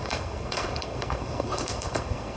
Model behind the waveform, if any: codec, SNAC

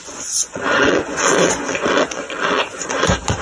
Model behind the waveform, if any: vocoder, Vocos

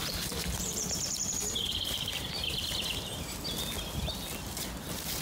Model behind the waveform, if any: vocoder, BigVGAN v2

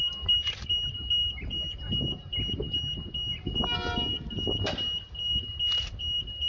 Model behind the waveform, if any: none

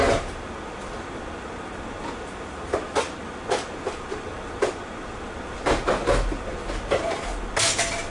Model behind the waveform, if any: none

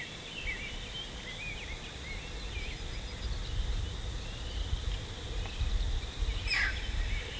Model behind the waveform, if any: none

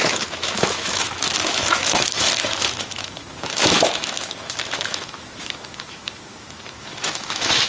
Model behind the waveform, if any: autoencoder, DAC-VAE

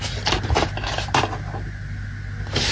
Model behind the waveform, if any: none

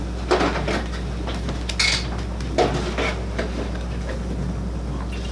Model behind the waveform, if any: none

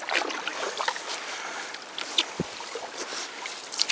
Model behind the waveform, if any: none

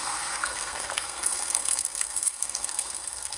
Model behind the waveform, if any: codec, SNAC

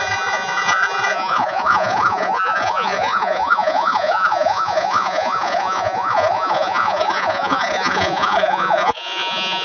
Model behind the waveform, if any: vocoder, Vocos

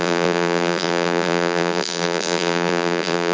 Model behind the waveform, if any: vocoder, BigVGAN v2